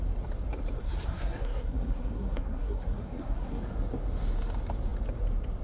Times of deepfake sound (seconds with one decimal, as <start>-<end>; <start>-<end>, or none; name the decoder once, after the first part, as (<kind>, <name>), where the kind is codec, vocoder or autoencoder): 0.8-3.6 (codec, SNAC)